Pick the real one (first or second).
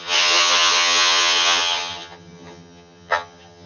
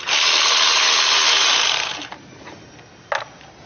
second